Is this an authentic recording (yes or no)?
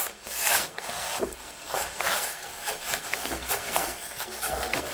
no